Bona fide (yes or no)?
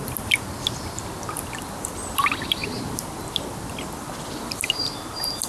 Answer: yes